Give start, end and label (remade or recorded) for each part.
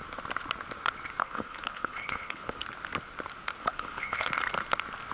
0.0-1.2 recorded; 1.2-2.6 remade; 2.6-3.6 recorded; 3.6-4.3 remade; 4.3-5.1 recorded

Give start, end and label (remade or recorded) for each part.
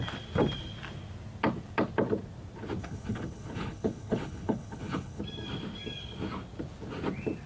0.0-2.8 recorded; 2.8-5.2 remade; 5.2-7.5 recorded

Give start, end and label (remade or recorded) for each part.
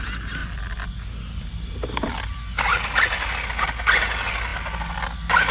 0.0-5.5 recorded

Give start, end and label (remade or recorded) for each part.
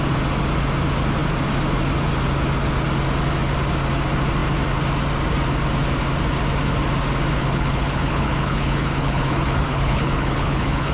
0.0-7.4 recorded; 7.4-10.9 remade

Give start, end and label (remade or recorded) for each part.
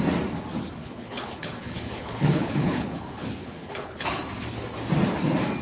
0.0-0.8 recorded; 0.8-4.2 remade; 4.2-5.6 recorded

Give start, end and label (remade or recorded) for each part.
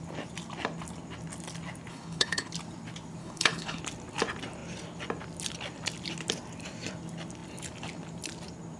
0.0-1.9 recorded; 1.9-2.5 remade; 2.5-3.2 recorded; 3.2-3.8 remade; 3.8-8.8 recorded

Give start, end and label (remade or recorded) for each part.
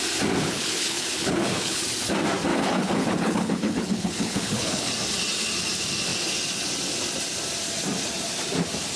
0.0-0.4 recorded; 0.4-1.8 remade; 1.8-2.5 recorded; 2.5-4.9 remade; 4.9-9.0 recorded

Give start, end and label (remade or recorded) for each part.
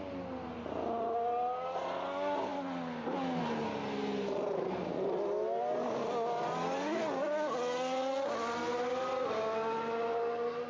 0.0-10.7 recorded